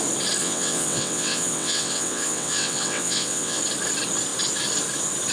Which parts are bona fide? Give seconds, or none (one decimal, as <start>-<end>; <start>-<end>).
0.0-0.4; 3.6-5.3